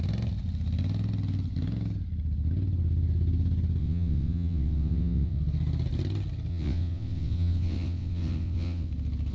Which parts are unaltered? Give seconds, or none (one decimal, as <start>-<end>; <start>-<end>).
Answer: 0.0-3.8; 5.4-6.5; 8.9-9.3